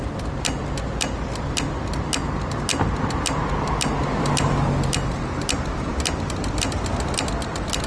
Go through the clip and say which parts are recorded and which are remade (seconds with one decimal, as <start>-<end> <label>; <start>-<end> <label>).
0.0-7.9 recorded